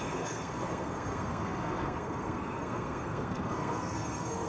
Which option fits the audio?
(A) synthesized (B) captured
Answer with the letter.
A